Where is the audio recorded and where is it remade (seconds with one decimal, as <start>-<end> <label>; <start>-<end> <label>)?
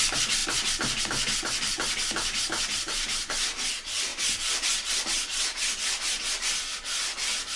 0.0-7.6 recorded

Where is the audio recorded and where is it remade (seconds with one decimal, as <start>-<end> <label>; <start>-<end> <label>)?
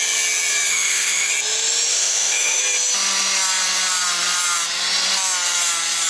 0.0-0.7 recorded; 0.7-1.3 remade; 1.3-1.9 recorded; 1.9-2.6 remade; 2.6-6.1 recorded